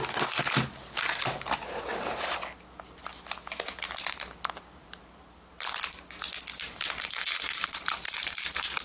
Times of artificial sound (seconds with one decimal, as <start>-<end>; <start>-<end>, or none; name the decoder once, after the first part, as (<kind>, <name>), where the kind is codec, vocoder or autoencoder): 4.8-5.8 (vocoder, BigVGAN v2); 6.5-8.8